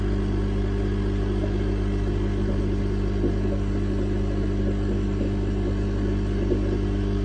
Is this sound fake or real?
real